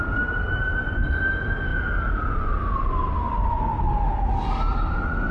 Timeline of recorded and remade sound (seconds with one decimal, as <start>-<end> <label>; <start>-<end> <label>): 0.0-5.3 recorded